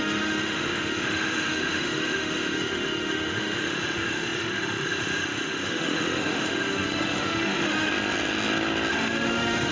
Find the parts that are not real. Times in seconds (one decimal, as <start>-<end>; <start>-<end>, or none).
0.0-7.9; 8.9-9.7